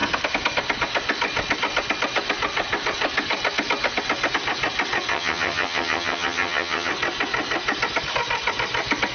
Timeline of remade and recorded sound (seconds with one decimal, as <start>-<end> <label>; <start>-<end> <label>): 0.0-5.1 recorded; 5.1-6.9 remade; 6.9-9.1 recorded